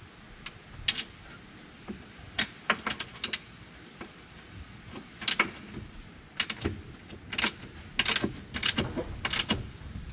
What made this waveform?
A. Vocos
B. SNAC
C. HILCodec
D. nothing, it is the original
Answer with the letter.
D